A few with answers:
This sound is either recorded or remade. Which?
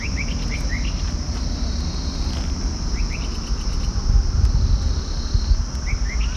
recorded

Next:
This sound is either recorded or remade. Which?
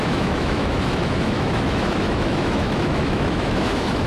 remade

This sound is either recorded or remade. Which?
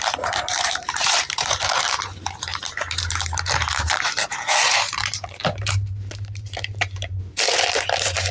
remade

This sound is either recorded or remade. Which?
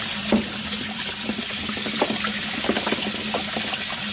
recorded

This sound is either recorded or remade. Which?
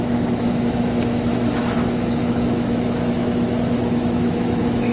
remade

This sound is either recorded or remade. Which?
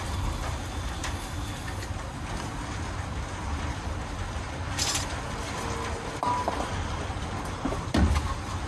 recorded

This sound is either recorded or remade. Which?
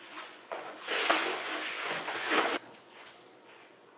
remade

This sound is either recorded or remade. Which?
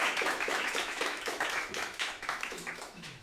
remade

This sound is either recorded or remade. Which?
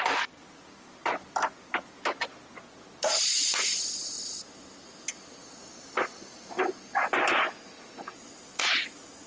recorded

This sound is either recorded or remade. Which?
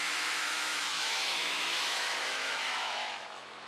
remade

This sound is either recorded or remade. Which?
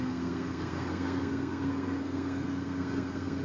remade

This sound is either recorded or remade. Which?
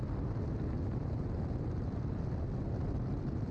recorded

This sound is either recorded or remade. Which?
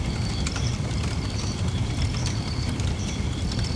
recorded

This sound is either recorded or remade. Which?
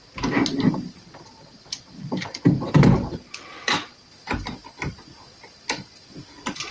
recorded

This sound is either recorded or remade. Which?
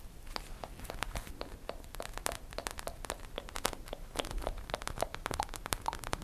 remade